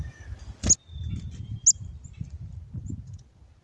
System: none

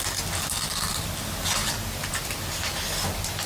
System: none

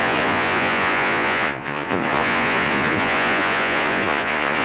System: vocoder, Vocos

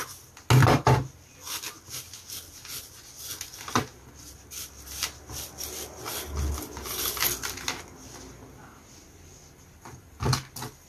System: none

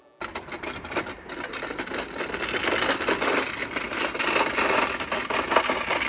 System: none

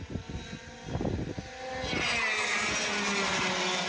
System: none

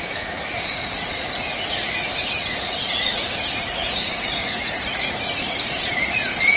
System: vocoder, Vocos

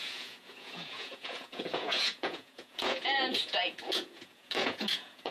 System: vocoder, Vocos